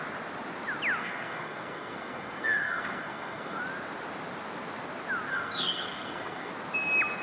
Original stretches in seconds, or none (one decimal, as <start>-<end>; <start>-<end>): 0.0-1.0; 3.6-5.3; 6.5-7.2